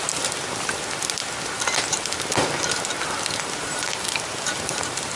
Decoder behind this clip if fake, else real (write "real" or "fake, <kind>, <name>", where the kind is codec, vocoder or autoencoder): real